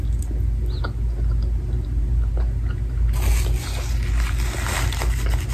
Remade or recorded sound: recorded